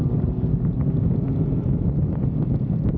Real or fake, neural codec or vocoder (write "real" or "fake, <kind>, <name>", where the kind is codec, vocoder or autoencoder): real